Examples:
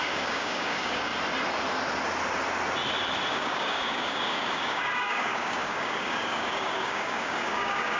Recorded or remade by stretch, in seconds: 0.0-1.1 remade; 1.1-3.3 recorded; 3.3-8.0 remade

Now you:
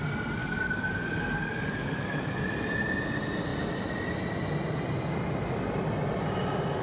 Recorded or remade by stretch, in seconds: 0.0-0.4 recorded; 0.4-2.4 remade; 2.4-6.8 recorded